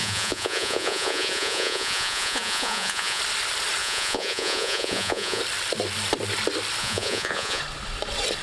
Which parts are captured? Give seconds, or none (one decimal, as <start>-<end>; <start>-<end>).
3.2-3.8; 5.4-6.8; 7.6-8.4